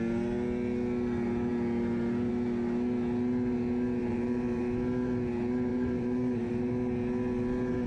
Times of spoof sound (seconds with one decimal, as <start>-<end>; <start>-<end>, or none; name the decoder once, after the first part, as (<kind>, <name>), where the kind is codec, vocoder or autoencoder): 4.0-4.6 (vocoder, BigVGAN v2); 5.7-6.7